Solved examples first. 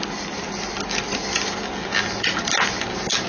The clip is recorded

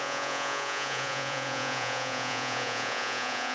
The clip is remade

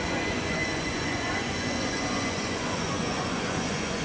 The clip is remade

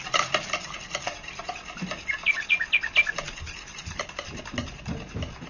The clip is recorded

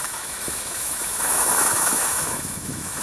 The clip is remade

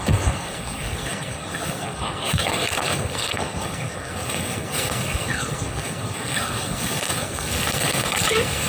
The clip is remade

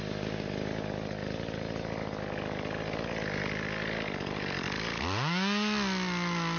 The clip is recorded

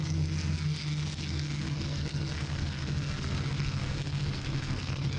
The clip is remade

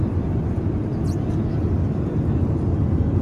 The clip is recorded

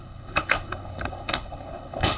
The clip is remade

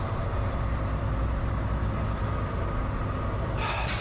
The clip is recorded